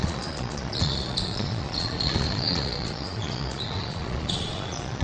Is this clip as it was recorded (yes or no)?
no